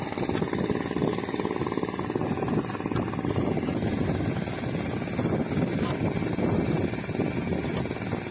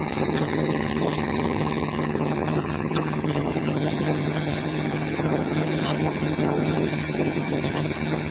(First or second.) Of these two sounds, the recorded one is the first